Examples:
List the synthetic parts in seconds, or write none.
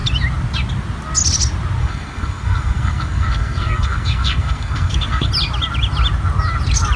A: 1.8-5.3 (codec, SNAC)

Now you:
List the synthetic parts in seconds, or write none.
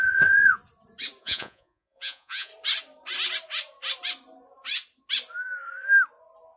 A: 0.0-0.6 (vocoder, Vocos); 1.2-2.5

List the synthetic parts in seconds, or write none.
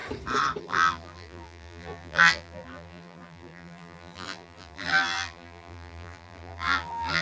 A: 0.6-7.2 (vocoder, BigVGAN v2)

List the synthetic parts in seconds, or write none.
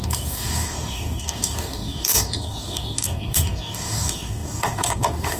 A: 0.0-5.4 (codec, DAC)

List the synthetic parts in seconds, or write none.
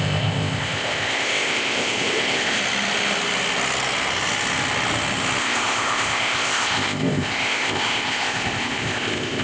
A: 0.0-2.6 (codec, ZipCodec); 5.4-9.4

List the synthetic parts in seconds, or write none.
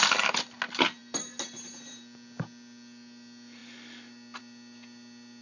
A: none